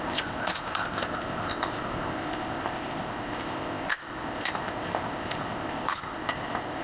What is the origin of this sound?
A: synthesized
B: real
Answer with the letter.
A